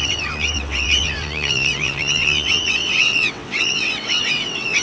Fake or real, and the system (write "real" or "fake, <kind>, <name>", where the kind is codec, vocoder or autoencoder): fake, vocoder, WaveNeXt